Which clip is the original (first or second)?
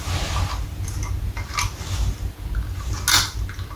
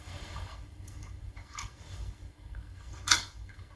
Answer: first